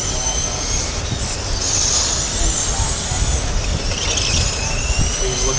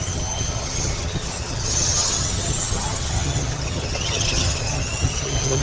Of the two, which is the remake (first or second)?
second